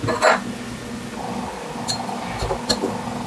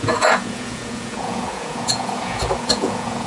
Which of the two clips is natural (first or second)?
first